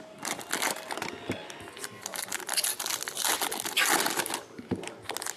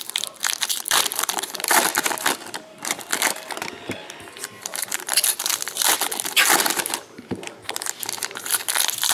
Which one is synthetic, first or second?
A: second